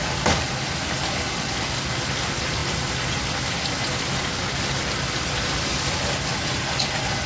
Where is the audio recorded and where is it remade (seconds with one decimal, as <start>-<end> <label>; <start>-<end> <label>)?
0.0-7.3 recorded